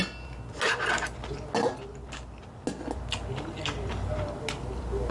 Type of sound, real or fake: real